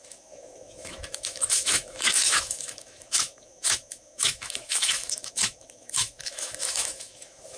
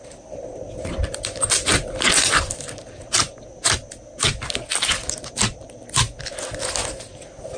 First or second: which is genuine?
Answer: second